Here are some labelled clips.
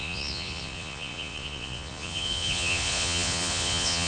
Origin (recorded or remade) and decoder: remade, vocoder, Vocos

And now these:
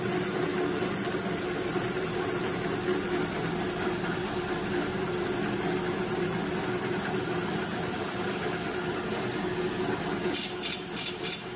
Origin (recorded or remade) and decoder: recorded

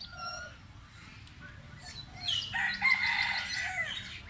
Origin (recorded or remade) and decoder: recorded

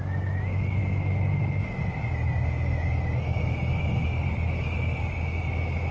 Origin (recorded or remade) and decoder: recorded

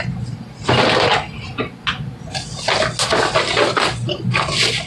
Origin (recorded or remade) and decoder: recorded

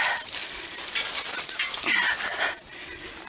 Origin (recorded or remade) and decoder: recorded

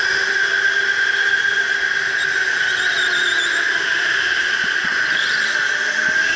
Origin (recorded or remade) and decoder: recorded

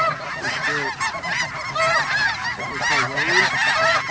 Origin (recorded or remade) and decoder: recorded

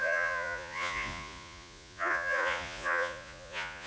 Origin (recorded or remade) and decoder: remade, vocoder, Vocos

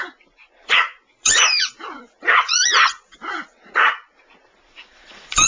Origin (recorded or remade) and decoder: remade, vocoder, Vocos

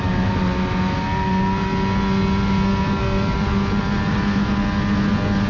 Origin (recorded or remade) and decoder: recorded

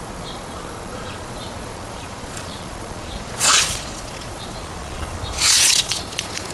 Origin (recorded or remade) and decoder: remade, vocoder, Vocos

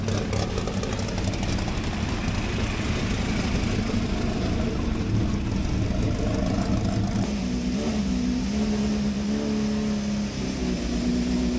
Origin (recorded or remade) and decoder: recorded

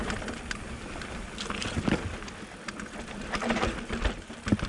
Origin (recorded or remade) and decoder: recorded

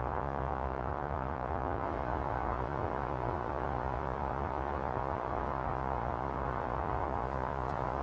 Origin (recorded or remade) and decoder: remade, vocoder, Vocos